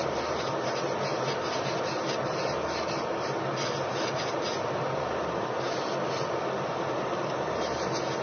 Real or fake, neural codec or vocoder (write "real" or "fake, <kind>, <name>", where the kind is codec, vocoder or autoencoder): real